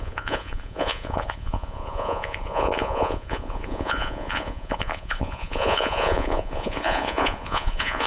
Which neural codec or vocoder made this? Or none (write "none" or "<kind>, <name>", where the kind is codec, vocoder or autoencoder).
vocoder, Vocos